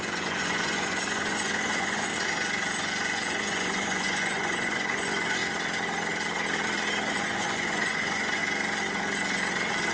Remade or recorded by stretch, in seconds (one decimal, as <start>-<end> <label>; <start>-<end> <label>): 0.0-2.1 remade; 2.1-2.8 recorded; 2.8-5.4 remade; 5.4-7.1 recorded; 7.1-8.4 remade; 8.4-9.9 recorded